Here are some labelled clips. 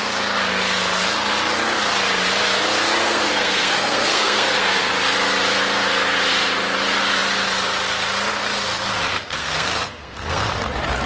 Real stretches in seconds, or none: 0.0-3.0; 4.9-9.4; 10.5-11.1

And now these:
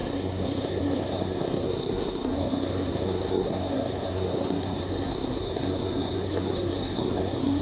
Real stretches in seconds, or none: none

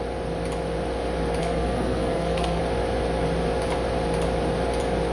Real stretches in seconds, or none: 0.0-1.4; 2.6-5.1

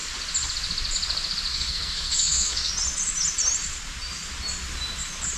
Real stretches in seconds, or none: 0.0-1.5; 2.7-5.4

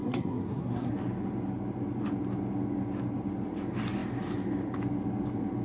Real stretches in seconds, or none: 0.9-5.6

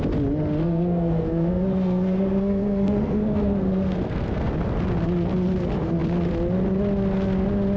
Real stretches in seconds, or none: 0.0-0.6; 4.5-7.8